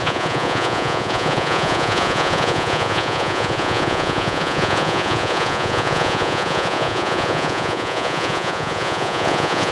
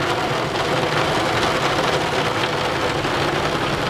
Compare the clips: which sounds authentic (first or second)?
second